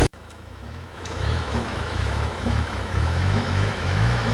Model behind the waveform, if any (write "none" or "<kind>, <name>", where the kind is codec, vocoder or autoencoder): autoencoder, DAC-VAE